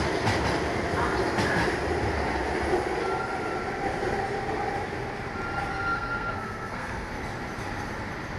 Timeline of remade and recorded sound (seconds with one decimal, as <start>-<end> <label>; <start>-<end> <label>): 0.0-5.7 recorded; 5.7-7.1 remade; 7.1-8.4 recorded

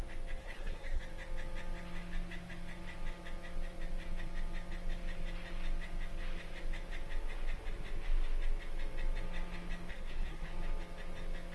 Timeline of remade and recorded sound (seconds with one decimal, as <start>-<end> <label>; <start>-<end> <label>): 0.0-0.4 recorded; 0.4-1.0 remade; 1.0-9.9 recorded; 9.9-10.5 remade; 10.5-11.5 recorded